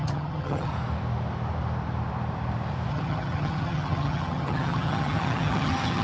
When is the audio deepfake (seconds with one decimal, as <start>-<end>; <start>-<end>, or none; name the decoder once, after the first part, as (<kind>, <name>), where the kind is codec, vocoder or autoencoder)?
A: 0.0-0.7 (vocoder, HiFi-GAN); 2.9-6.0